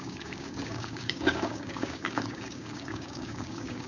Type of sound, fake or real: fake